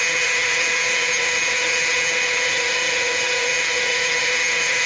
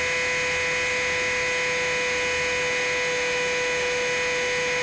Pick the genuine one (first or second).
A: second